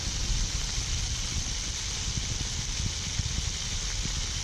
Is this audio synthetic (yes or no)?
no